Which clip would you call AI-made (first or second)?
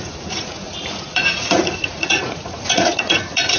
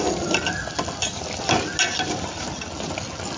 first